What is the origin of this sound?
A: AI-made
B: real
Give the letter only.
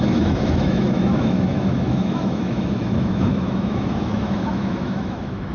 A